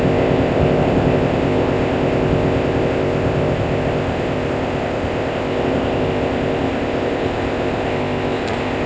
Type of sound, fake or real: fake